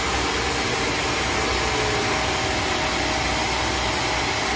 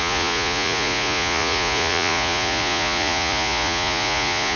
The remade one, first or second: second